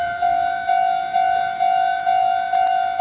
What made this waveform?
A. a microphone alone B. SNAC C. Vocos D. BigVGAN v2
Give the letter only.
C